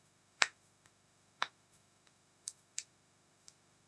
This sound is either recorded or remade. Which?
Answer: remade